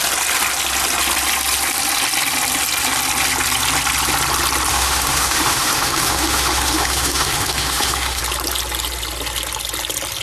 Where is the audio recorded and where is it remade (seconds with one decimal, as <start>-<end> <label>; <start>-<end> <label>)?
0.0-4.7 recorded; 4.7-8.2 remade; 8.2-10.2 recorded